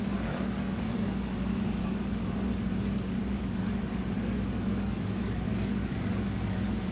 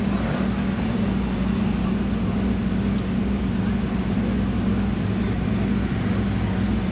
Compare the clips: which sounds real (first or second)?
second